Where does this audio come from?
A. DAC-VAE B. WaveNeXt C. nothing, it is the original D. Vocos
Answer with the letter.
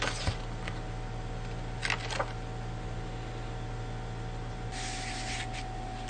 C